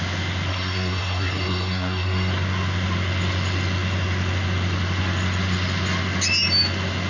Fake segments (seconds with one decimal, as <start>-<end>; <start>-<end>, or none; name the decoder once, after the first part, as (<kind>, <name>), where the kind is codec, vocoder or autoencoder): 0.5-2.3 (codec, SNAC)